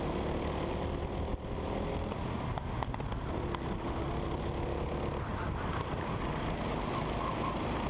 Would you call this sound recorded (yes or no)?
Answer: yes